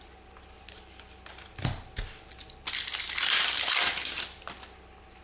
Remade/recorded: recorded